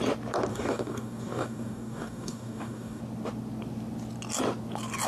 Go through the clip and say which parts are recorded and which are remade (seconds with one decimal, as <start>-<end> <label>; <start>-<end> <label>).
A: 0.0-0.5 recorded; 0.5-3.0 remade; 3.0-5.1 recorded